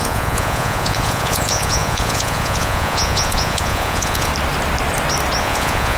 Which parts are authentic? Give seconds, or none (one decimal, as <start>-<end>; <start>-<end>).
4.3-5.4